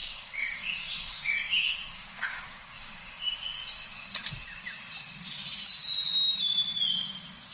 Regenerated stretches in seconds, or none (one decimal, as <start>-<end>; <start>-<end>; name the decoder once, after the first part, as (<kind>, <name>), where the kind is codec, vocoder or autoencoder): 0.0-3.6 (codec, DAC)